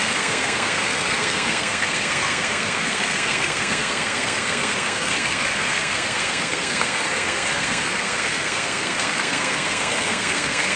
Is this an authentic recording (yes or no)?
no